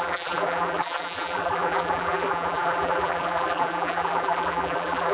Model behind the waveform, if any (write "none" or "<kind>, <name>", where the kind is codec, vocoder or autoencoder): vocoder, BigVGAN v2